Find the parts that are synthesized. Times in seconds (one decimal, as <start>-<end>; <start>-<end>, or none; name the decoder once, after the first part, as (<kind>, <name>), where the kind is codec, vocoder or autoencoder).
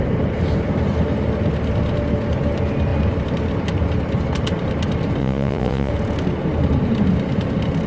5.2-5.9 (vocoder, Vocos)